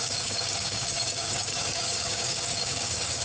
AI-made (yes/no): yes